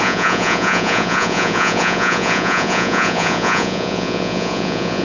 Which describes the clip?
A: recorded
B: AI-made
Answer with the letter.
B